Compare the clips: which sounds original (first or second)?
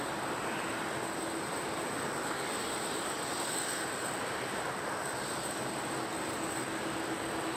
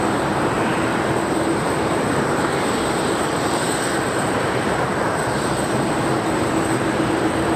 first